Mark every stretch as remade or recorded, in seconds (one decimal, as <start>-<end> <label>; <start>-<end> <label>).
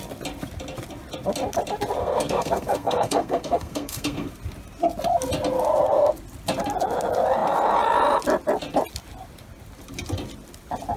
0.0-2.0 recorded; 2.0-4.3 remade; 4.3-11.0 recorded